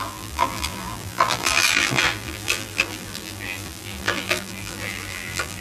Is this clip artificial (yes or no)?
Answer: yes